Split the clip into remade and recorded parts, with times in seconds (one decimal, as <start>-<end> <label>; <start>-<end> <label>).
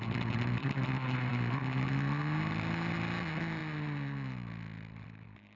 0.0-5.6 recorded